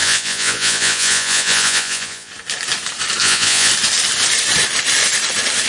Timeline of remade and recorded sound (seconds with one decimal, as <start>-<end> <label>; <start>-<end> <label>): 0.0-2.3 remade; 2.3-3.2 recorded; 3.2-3.7 remade; 3.7-5.7 recorded